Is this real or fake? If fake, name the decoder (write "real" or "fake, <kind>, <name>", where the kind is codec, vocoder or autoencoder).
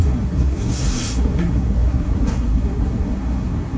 fake, codec, SNAC